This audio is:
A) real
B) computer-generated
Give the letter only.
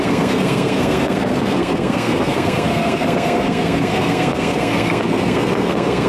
B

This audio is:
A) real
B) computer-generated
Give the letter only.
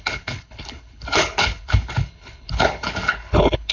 B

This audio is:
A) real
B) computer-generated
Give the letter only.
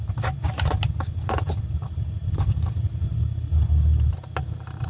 A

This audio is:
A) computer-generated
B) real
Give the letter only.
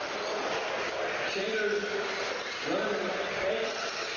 B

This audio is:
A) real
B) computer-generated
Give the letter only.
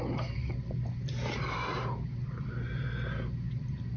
A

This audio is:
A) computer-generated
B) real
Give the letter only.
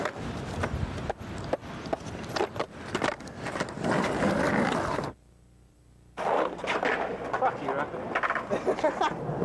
B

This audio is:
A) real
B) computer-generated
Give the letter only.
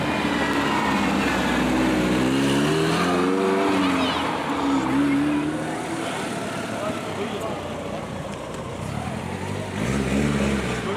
A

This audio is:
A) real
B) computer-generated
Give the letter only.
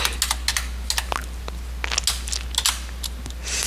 A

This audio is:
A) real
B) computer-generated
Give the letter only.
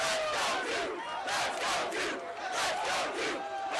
A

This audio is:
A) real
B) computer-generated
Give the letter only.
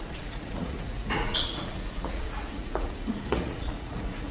B